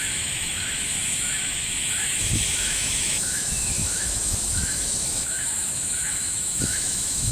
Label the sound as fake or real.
fake